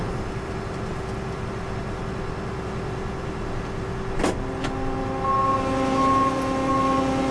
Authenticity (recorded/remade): recorded